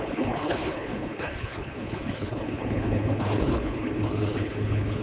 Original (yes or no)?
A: no